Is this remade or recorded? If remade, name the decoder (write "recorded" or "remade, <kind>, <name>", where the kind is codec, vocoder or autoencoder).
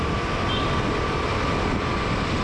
recorded